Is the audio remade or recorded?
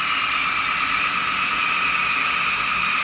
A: recorded